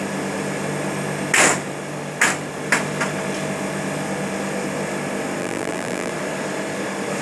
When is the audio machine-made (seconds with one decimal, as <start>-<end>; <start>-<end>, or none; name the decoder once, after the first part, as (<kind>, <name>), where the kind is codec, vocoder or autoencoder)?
5.4-6.1 (vocoder, BigVGAN v2)